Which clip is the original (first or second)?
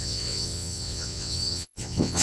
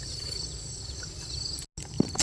second